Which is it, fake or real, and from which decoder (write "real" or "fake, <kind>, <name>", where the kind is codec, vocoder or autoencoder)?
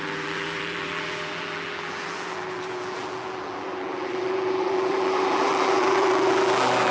fake, vocoder, BigVGAN v2